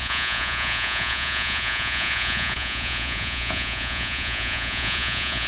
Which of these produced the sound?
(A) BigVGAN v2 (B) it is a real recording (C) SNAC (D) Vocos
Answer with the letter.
D